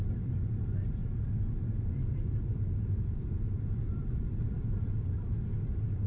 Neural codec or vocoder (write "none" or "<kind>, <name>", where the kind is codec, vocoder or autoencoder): vocoder, BigVGAN v2